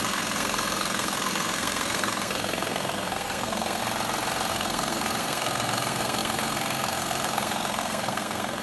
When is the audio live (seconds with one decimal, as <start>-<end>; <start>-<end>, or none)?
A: 3.8-4.5